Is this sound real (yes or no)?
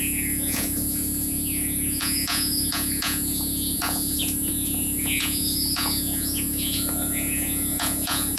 no